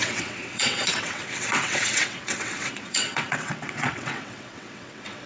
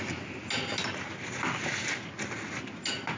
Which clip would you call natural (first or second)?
second